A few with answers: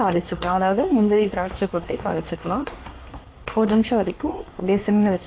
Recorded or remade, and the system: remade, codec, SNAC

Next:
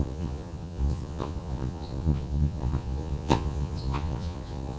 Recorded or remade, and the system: remade, vocoder, Vocos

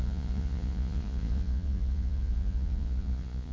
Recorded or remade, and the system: remade, vocoder, Vocos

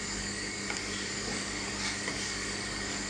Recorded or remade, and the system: remade, codec, DAC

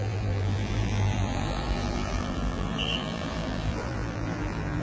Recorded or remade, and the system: remade, vocoder, BigVGAN v2